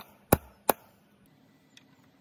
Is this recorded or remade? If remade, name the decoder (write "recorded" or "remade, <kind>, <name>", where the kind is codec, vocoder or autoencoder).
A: recorded